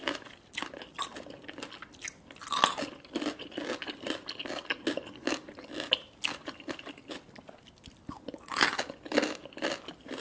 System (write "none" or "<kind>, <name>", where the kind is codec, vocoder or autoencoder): none